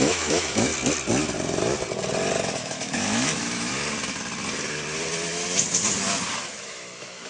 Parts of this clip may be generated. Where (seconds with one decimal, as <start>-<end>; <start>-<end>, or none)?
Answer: 0.0-0.7; 2.6-3.7; 6.5-7.3